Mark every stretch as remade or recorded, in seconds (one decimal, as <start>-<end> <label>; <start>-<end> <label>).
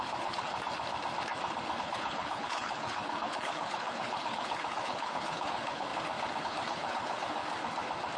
0.0-0.5 remade; 0.5-1.8 recorded; 1.8-5.9 remade; 5.9-6.4 recorded; 6.4-7.4 remade; 7.4-8.2 recorded